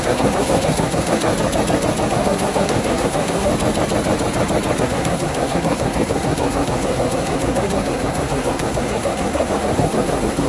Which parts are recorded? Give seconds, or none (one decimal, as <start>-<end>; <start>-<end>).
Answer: 1.3-2.1; 3.5-4.8